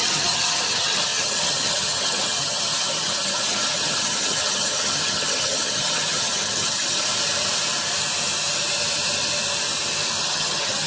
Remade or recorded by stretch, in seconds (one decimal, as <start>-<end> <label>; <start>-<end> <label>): 0.0-7.1 remade; 7.1-10.2 recorded; 10.2-10.9 remade